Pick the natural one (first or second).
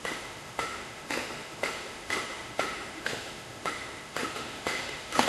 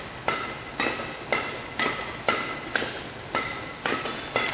second